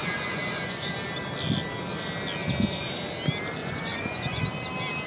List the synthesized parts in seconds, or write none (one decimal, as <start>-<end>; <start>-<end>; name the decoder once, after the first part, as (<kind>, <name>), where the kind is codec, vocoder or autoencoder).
0.0-0.9 (vocoder, Vocos); 3.6-4.4